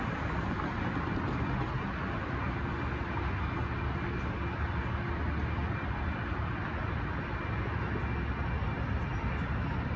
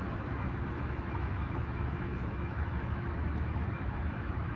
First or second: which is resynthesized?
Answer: second